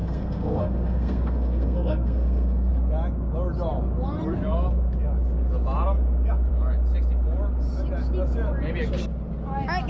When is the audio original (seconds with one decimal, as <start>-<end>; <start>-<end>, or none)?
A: 2.7-9.9